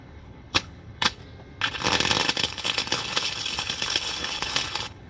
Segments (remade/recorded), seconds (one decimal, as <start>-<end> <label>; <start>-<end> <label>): 0.0-1.2 remade; 1.2-2.2 recorded; 2.2-5.1 remade